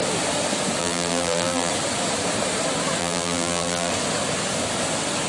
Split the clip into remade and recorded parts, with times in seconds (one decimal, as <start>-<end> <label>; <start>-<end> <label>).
0.0-0.8 recorded; 0.8-1.7 remade; 1.7-3.0 recorded; 3.0-3.9 remade; 3.9-5.3 recorded